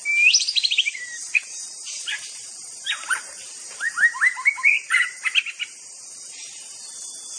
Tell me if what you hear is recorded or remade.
remade